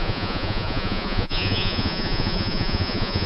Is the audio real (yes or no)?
no